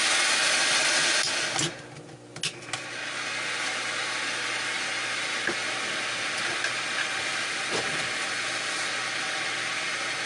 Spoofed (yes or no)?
no